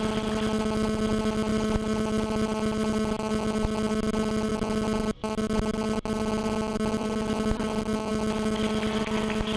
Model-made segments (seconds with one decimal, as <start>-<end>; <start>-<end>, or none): 1.5-2.9